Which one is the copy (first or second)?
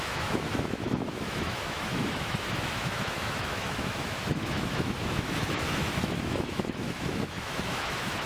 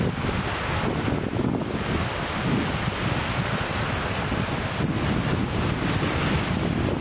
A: first